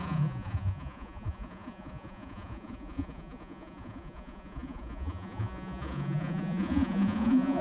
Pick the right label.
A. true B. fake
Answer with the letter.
B